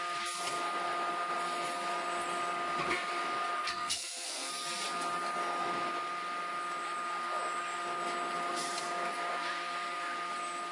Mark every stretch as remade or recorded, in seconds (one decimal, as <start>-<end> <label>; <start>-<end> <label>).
0.0-3.6 recorded; 3.6-4.5 remade; 4.5-10.7 recorded